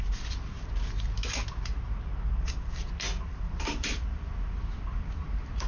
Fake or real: real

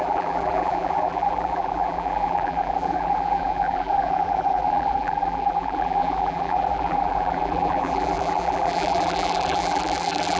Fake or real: fake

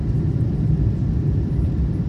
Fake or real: fake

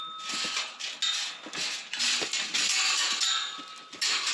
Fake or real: real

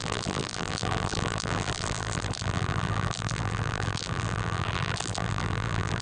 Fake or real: fake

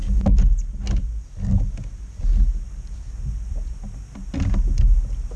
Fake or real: real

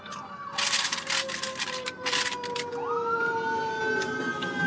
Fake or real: real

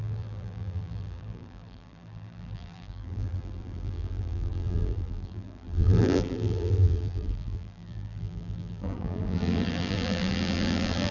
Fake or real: fake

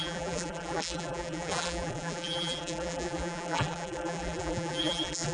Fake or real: fake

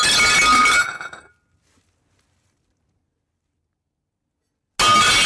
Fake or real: real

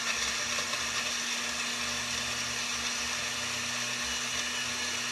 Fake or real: real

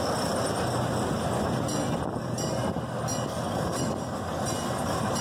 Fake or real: real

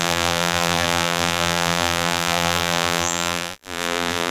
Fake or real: fake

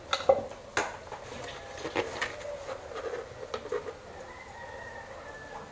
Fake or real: real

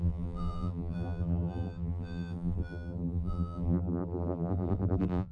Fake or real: fake